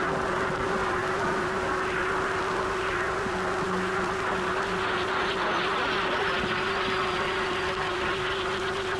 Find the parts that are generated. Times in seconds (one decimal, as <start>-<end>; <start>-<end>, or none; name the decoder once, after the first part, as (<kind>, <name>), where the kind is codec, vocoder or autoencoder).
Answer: none